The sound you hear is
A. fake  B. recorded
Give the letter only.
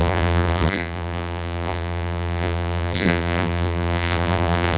A